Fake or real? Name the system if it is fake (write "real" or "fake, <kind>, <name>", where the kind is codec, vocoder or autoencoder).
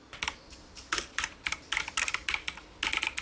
real